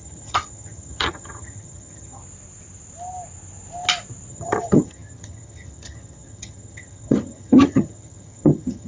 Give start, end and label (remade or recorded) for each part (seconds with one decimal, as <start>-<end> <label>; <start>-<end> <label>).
0.0-2.2 remade; 2.2-4.3 recorded; 4.3-8.9 remade